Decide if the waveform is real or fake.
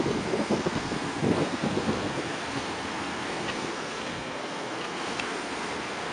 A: fake